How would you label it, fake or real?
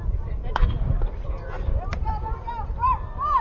fake